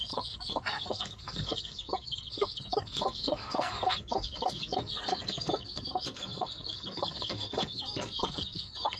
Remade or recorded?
remade